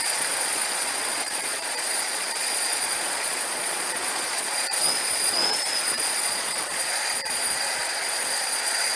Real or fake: fake